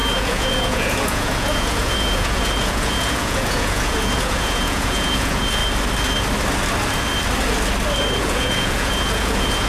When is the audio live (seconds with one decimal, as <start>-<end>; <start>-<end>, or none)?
5.6-8.2